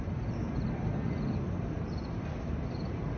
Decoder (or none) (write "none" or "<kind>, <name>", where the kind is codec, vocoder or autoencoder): none